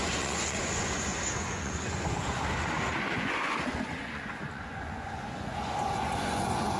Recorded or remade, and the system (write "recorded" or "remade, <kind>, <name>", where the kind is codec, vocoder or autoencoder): remade, vocoder, Vocos